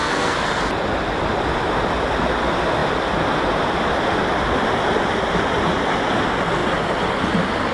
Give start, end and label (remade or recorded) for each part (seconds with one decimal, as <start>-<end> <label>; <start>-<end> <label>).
0.0-0.6 remade; 0.6-7.7 recorded